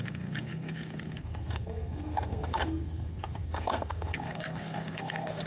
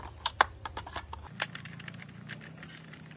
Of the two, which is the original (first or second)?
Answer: second